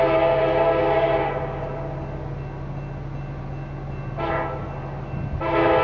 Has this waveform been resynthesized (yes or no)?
no